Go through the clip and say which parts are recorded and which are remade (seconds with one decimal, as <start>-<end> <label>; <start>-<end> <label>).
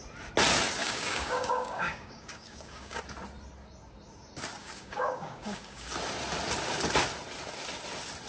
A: 0.0-0.8 recorded; 0.8-3.0 remade; 3.0-4.6 recorded; 4.6-5.9 remade; 5.9-8.3 recorded